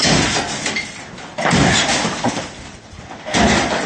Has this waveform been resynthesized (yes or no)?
no